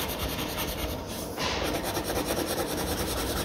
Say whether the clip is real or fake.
fake